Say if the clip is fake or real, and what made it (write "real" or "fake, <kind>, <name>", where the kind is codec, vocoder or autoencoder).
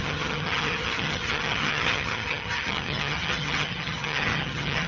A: fake, vocoder, HiFi-GAN